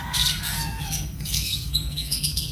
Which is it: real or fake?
fake